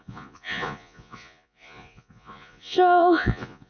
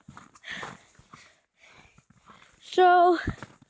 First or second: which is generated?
first